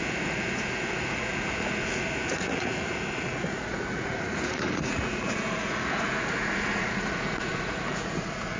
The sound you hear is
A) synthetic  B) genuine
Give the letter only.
A